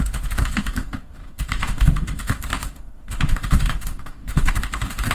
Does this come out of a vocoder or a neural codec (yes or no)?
yes